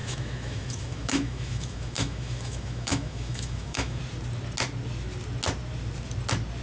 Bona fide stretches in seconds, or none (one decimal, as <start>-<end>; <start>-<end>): 4.0-6.6